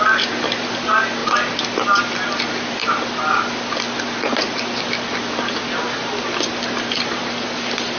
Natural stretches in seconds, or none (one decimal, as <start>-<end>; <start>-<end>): 0.0-8.0